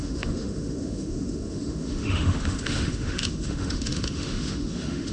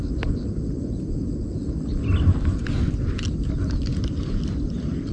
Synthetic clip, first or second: first